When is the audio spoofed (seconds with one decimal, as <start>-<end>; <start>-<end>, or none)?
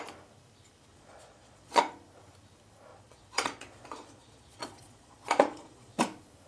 0.9-1.8; 2.9-6.0